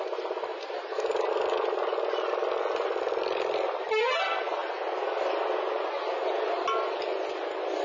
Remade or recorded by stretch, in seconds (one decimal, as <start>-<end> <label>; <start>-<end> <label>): 0.0-7.8 recorded